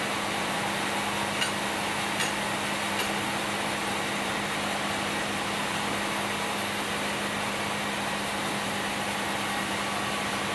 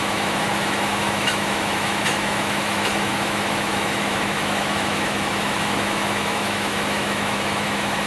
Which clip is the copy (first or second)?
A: second